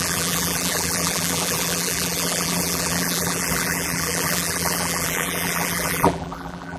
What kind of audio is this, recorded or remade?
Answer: remade